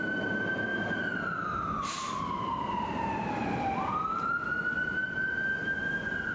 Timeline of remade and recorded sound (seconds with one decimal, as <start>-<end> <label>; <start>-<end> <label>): 0.0-0.7 recorded; 0.7-4.5 remade; 4.5-6.3 recorded